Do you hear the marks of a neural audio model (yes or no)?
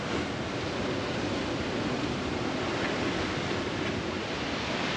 no